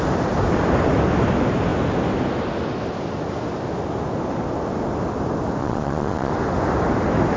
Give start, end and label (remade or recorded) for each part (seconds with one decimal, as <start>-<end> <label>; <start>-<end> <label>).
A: 0.0-5.6 recorded; 5.6-6.3 remade; 6.3-7.4 recorded